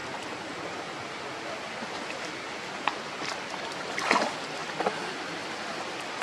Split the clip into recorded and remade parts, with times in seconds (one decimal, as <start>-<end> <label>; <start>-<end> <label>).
0.0-3.7 remade; 3.7-6.2 recorded